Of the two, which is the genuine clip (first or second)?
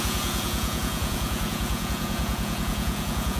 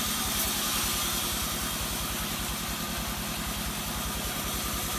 second